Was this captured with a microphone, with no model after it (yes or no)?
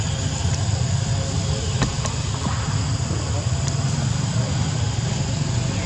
no